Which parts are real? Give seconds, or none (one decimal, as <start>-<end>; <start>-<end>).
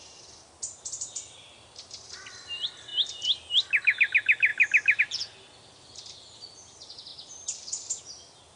0.0-8.6